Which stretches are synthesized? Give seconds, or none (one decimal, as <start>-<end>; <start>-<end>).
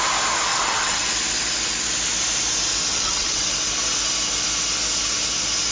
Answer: 0.5-1.1; 2.9-3.5